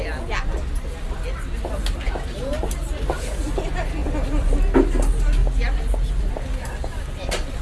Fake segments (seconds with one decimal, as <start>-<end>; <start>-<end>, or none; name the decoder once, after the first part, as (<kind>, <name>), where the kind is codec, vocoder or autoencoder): none